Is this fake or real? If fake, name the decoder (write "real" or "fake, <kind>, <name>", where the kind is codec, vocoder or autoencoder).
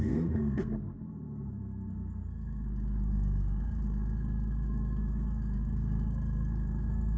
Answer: fake, codec, SNAC